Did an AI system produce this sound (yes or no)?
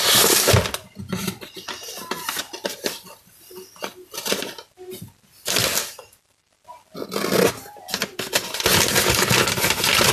no